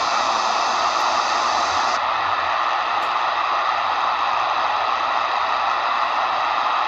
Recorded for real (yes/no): yes